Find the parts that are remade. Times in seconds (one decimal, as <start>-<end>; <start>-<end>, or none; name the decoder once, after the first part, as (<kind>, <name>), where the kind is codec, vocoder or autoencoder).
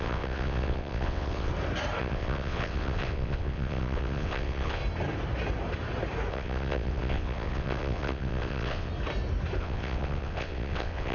0.0-1.5 (vocoder, WaveNeXt); 2.0-4.8; 6.3-8.9; 9.6-11.1